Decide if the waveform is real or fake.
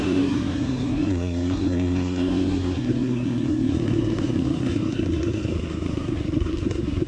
fake